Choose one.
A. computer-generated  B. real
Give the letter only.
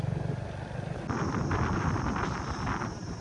B